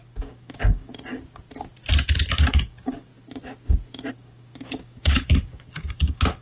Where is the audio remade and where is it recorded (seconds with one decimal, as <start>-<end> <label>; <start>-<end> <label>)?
0.0-0.9 remade; 0.9-2.5 recorded; 2.5-3.1 remade; 3.1-4.1 recorded; 4.1-6.4 remade

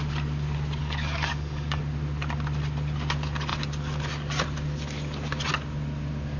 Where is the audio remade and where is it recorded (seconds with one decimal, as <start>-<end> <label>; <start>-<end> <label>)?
0.0-0.8 recorded; 0.8-1.8 remade; 1.8-6.4 recorded

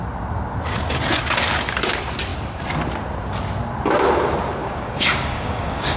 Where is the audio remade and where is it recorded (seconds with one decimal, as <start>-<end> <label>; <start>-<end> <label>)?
0.0-4.6 recorded; 4.6-6.0 remade

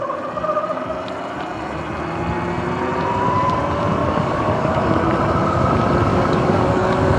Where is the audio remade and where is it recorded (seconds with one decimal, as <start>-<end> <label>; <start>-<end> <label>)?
0.0-4.0 recorded; 4.0-4.9 remade; 4.9-6.1 recorded; 6.1-7.2 remade

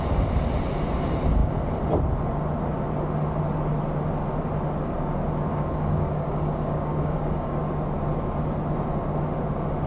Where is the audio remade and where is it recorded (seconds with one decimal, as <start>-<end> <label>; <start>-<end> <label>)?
0.0-5.5 recorded; 5.5-7.6 remade; 7.6-9.9 recorded

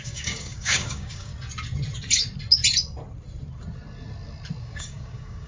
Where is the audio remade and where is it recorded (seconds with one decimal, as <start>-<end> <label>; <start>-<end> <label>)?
0.0-1.3 remade; 1.3-4.6 recorded; 4.6-5.5 remade

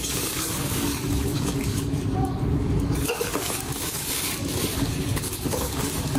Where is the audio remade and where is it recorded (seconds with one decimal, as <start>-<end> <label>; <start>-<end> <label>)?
0.0-6.2 remade